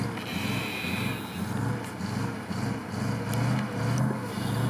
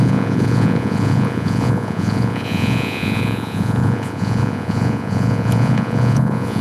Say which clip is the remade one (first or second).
second